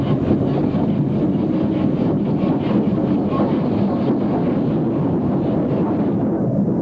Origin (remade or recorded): recorded